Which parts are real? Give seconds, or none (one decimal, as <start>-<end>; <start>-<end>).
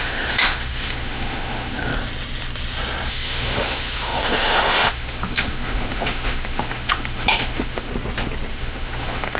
1.9-3.1; 7.9-8.5